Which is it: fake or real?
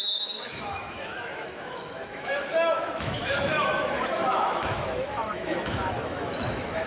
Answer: fake